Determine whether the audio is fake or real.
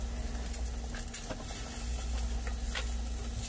real